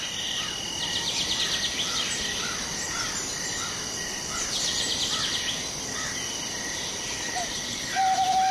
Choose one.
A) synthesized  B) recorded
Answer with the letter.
B